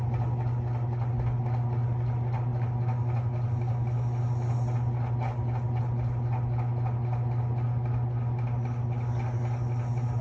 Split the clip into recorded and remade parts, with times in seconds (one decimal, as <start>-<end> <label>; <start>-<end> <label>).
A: 0.0-10.2 recorded